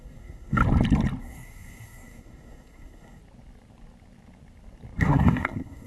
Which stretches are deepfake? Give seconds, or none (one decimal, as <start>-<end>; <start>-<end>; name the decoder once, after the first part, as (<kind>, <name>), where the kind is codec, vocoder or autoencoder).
0.0-0.6 (codec, SNAC); 1.2-3.2; 5.0-5.9